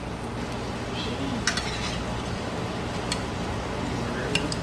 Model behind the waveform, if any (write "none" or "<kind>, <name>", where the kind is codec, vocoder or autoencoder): none